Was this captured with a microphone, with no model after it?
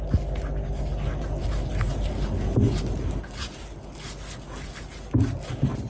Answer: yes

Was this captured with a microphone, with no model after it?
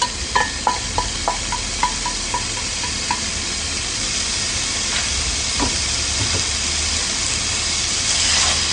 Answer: yes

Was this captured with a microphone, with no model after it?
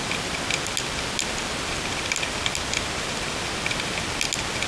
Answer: yes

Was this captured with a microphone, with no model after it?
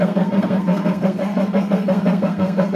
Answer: no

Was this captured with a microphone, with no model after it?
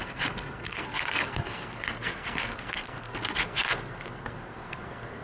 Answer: no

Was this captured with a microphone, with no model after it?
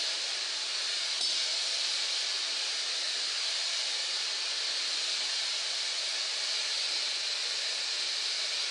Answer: yes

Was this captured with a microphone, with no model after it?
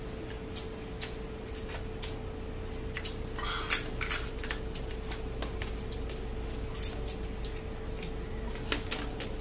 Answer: yes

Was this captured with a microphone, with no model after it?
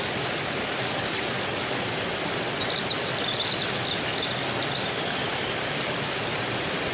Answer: yes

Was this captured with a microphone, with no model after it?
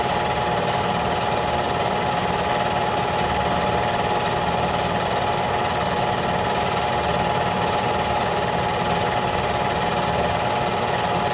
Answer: yes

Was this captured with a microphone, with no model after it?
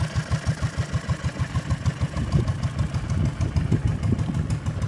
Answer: yes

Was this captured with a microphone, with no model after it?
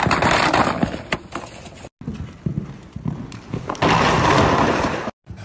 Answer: yes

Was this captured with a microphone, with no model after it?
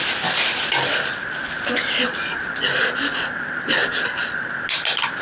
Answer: yes